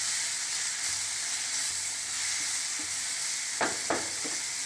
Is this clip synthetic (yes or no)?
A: no